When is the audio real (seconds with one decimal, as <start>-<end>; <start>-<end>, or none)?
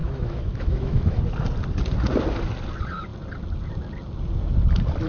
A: 1.2-5.1